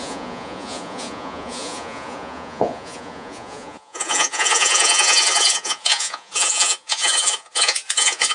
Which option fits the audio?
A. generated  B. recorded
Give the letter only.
A